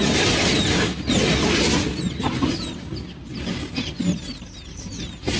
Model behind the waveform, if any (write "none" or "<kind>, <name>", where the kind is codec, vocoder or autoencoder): none